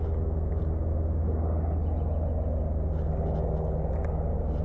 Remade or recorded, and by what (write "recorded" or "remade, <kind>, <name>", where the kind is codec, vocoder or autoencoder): recorded